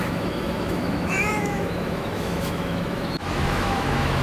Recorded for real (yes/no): no